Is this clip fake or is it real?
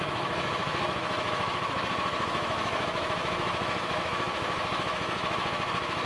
fake